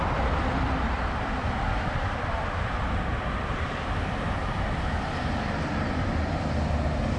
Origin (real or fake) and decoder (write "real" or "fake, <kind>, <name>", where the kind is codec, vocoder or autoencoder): fake, vocoder, BigVGAN v2